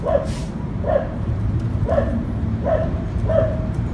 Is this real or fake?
fake